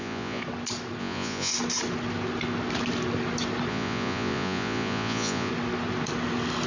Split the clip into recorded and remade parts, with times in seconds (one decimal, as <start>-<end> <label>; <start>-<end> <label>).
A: 0.0-0.4 remade; 0.4-1.0 recorded; 1.0-1.5 remade; 1.5-3.7 recorded; 3.7-5.5 remade; 5.5-6.7 recorded